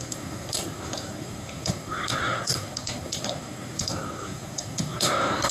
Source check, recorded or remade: remade